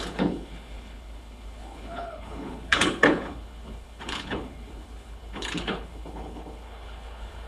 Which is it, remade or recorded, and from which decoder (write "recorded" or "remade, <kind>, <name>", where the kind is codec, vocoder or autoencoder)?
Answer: remade, codec, HILCodec